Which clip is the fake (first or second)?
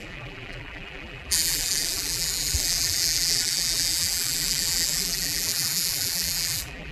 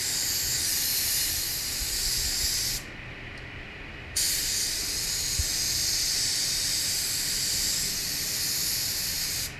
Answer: first